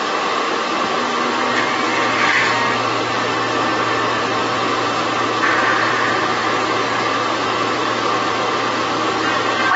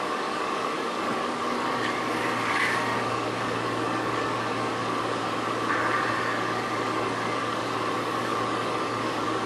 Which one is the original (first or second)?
first